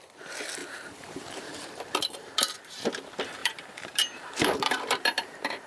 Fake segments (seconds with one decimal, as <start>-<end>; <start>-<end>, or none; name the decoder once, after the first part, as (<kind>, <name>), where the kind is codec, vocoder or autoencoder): 0.6-2.7 (vocoder, BigVGAN v2); 3.4-5.7